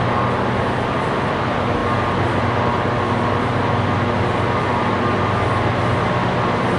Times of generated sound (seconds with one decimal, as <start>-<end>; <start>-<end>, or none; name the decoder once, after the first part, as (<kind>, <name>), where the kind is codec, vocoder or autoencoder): none